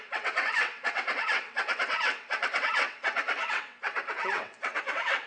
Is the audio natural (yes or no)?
no